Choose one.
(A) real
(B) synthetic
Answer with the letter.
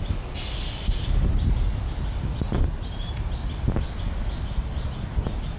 A